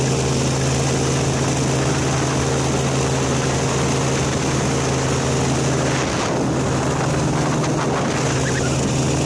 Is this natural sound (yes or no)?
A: yes